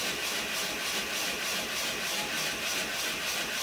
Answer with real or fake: real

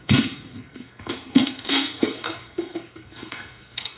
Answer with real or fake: fake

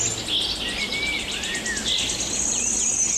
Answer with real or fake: real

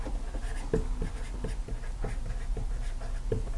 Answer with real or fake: real